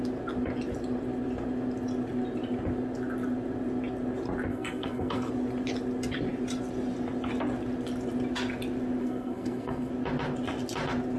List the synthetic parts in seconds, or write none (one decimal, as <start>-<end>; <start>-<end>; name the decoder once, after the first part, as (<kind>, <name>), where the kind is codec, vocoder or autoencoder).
4.5-5.3 (codec, SNAC); 9.0-9.9